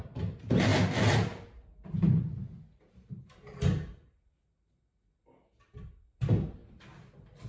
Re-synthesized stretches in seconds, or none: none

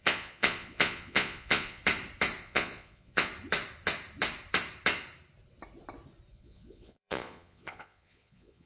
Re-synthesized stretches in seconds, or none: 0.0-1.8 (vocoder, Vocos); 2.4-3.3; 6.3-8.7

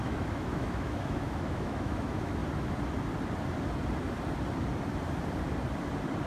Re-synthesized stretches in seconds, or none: 0.0-2.4 (autoencoder, DAC-VAE)